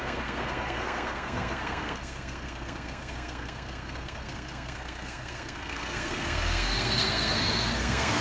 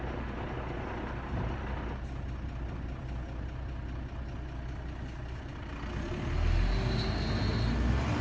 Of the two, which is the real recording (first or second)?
second